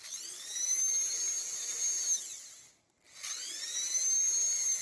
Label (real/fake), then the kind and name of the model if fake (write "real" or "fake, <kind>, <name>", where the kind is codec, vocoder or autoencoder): real